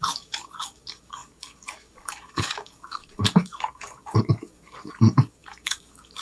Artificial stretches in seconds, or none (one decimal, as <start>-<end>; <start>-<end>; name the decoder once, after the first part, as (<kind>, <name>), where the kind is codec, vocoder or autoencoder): 0.0-6.2 (codec, DAC)